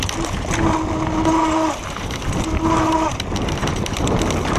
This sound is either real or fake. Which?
real